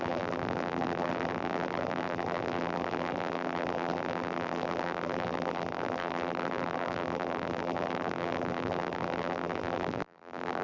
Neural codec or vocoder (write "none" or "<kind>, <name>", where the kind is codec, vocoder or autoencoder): vocoder, BigVGAN v2